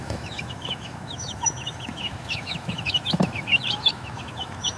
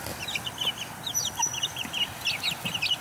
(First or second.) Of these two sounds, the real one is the second